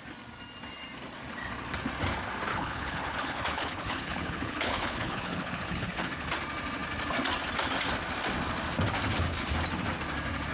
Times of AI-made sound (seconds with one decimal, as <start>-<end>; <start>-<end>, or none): 2.5-6.3